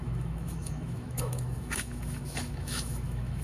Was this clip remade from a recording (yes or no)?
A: yes